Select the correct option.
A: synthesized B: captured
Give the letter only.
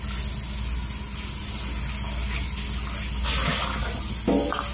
B